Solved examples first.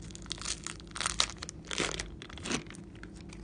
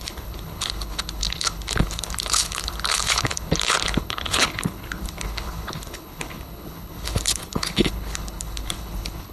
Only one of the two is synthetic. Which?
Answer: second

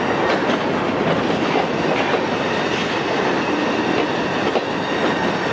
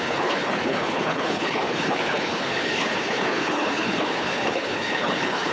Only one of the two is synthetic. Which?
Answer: second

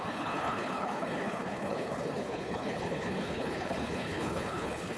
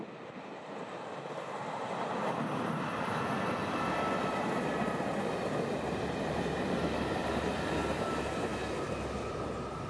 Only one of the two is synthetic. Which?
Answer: first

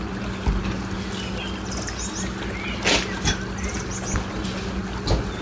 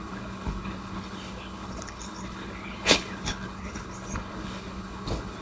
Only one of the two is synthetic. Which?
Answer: second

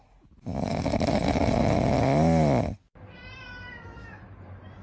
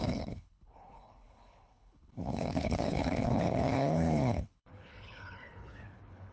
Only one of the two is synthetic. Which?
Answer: second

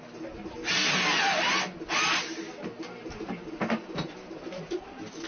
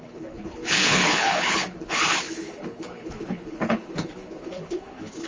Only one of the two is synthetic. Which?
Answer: second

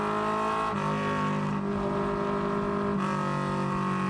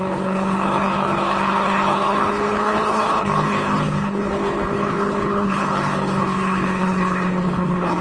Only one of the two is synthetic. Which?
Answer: second